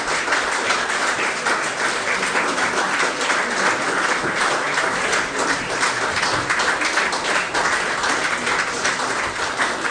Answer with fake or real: real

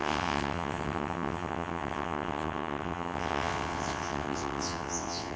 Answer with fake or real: fake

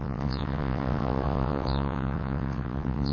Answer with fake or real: fake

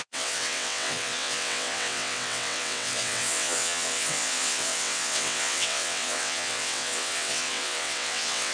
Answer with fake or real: fake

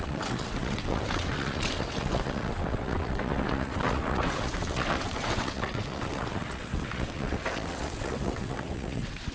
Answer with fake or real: fake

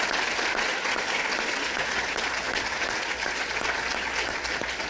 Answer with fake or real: real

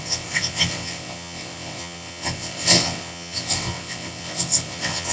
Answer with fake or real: fake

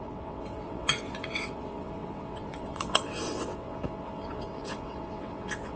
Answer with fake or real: fake